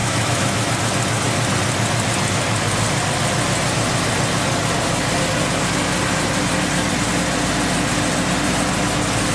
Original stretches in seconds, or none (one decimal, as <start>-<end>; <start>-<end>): 0.7-9.3